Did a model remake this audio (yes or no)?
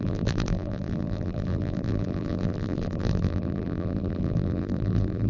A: yes